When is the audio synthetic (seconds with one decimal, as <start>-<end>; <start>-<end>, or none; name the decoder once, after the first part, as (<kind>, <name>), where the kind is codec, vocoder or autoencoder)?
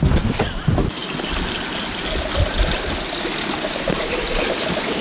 none